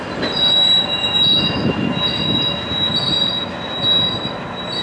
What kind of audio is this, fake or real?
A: real